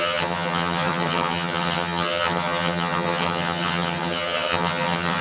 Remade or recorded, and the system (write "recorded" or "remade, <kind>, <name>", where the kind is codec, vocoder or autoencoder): remade, vocoder, HiFi-GAN